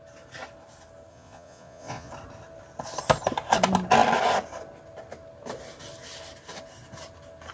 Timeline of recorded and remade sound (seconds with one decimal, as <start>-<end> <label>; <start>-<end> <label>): 0.0-1.1 recorded; 1.1-2.1 remade; 2.1-7.5 recorded